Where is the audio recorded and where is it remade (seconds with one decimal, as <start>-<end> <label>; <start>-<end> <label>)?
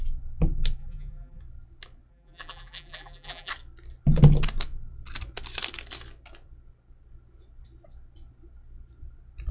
0.0-0.8 recorded; 0.8-1.4 remade; 1.4-2.1 recorded; 2.1-3.5 remade; 3.5-9.5 recorded